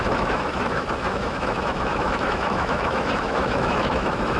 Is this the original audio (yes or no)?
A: no